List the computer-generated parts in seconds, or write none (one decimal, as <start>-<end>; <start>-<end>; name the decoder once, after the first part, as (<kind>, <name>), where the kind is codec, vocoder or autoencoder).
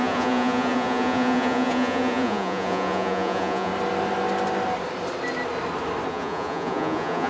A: 0.0-3.7 (vocoder, Vocos); 6.1-7.3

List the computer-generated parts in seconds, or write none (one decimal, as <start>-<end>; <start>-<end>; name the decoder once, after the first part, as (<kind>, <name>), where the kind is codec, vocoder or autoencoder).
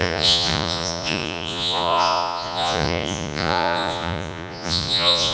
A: 0.0-5.3 (vocoder, Vocos)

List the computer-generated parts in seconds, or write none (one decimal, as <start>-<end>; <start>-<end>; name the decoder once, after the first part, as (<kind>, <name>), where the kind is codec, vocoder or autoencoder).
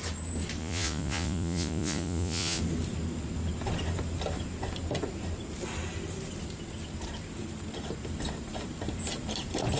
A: 0.6-2.6 (vocoder, Vocos)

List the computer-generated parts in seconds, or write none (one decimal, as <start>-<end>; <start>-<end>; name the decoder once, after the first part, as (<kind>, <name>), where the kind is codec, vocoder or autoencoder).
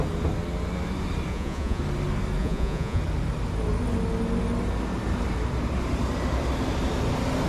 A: 1.3-1.8 (vocoder, Vocos); 2.4-3.0